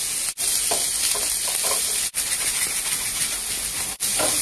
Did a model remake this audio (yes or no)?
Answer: no